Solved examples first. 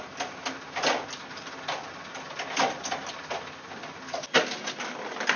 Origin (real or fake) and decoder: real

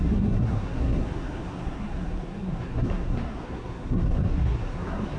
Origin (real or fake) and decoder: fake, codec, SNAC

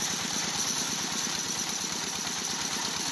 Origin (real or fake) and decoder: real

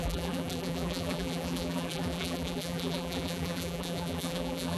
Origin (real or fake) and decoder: fake, vocoder, BigVGAN v2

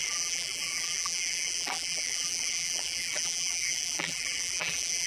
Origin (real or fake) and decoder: fake, vocoder, BigVGAN v2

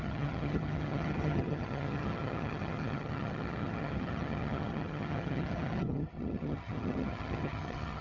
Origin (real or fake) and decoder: fake, vocoder, HiFi-GAN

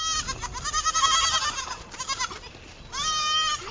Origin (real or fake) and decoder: real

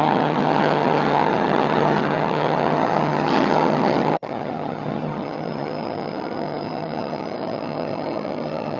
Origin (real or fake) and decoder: fake, vocoder, HiFi-GAN